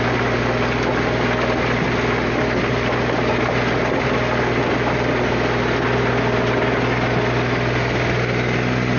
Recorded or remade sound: recorded